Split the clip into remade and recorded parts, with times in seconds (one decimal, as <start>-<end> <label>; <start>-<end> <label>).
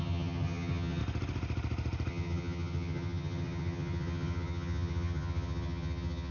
0.0-1.0 remade; 1.0-2.1 recorded; 2.1-6.3 remade